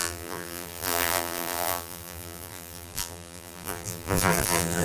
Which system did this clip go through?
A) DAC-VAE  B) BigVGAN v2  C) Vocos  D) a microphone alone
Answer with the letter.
B